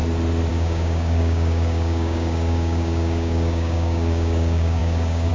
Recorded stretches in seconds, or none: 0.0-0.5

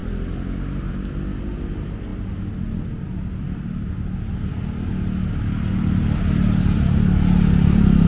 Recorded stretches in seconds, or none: 0.0-8.1

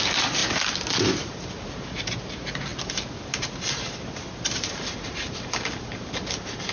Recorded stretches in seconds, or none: 0.0-6.7